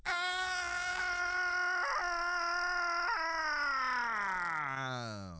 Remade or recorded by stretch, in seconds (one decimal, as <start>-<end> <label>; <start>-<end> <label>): 0.0-1.0 remade; 1.0-5.4 recorded